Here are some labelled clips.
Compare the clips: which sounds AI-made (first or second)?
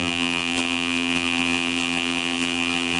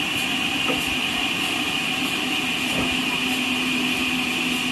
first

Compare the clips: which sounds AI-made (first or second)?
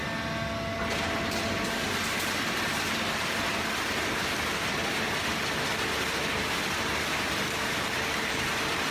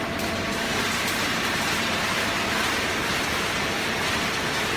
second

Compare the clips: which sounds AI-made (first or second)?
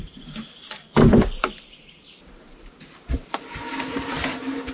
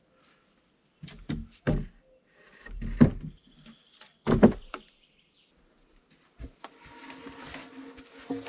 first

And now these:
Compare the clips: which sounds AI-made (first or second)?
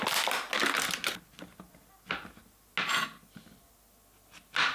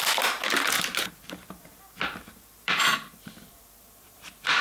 second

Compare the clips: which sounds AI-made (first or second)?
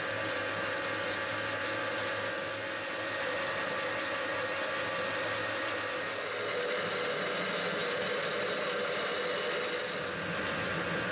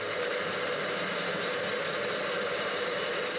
second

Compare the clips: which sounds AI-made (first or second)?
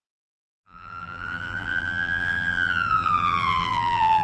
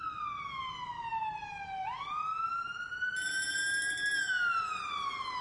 first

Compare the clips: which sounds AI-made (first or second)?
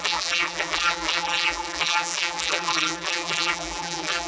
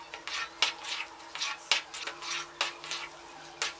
first